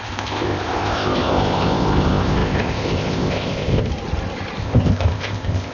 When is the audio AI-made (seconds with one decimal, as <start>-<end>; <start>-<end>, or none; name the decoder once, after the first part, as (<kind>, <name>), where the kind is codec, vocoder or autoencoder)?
0.0-3.9 (codec, ZipCodec); 4.6-5.7